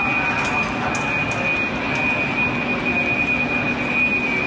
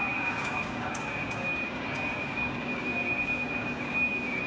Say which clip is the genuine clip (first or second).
first